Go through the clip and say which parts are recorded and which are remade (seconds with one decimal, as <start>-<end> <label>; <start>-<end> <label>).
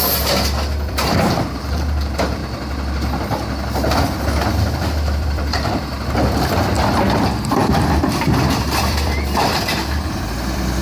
0.0-2.4 remade; 2.4-4.5 recorded; 4.5-10.8 remade